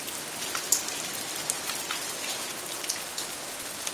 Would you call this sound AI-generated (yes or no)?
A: no